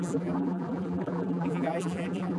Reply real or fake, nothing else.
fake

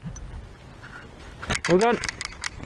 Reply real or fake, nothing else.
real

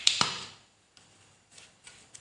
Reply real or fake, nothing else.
fake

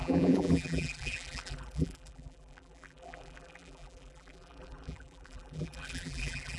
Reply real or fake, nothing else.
fake